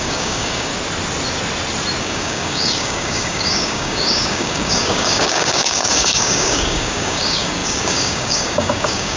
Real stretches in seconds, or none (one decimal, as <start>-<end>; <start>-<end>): 0.7-2.0